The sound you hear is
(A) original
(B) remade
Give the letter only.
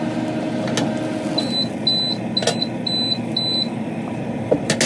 A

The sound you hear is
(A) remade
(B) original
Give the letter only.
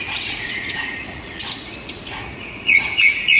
A